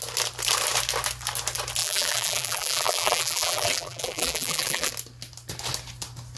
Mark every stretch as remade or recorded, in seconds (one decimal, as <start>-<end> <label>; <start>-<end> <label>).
0.0-1.8 recorded; 1.8-4.9 remade; 4.9-6.4 recorded